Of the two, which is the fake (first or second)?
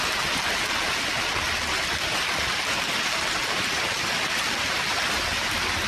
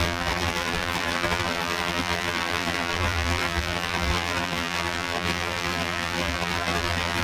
second